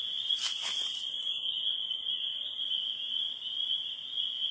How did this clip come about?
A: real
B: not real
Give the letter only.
A